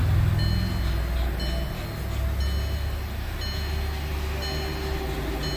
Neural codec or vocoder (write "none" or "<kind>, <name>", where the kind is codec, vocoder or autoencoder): none